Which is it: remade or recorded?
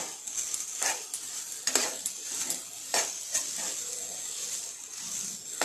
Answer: recorded